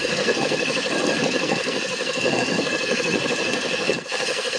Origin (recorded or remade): remade